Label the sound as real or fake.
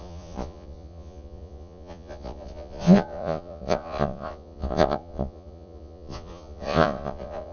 fake